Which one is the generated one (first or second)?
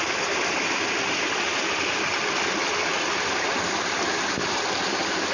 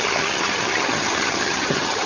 second